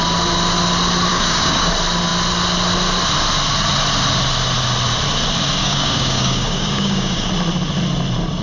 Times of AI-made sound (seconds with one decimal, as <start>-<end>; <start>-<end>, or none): 1.1-1.7; 5.6-7.3